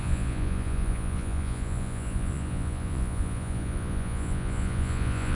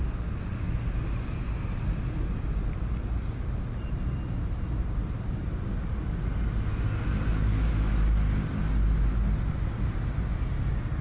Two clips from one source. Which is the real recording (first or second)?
second